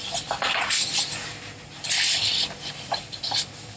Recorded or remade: recorded